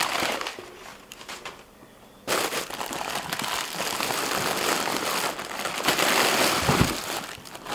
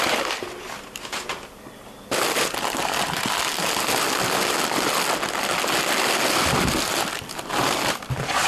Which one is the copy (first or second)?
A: first